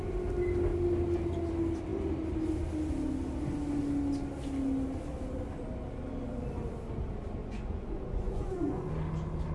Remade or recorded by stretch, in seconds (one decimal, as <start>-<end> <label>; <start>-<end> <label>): 0.0-7.4 recorded; 7.4-8.9 remade; 8.9-9.5 recorded